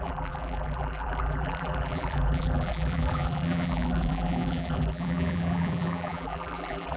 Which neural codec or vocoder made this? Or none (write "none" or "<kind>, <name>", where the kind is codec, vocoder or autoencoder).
vocoder, BigVGAN v2